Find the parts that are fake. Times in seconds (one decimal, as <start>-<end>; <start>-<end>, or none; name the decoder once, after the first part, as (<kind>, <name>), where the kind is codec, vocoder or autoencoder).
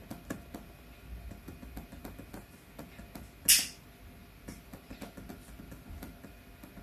none